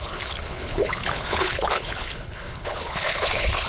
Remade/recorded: remade